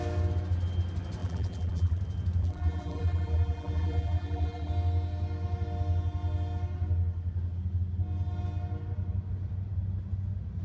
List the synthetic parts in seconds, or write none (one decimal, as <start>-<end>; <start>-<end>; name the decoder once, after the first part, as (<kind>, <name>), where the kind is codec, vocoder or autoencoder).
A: 1.2-2.0 (vocoder, BigVGAN v2); 2.4-4.7